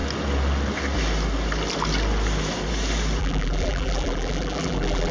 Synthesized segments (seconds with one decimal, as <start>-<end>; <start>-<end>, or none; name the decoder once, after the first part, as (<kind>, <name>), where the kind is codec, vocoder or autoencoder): 3.2-5.1 (vocoder, BigVGAN v2)